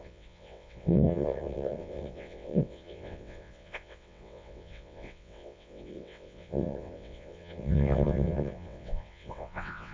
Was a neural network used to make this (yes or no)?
yes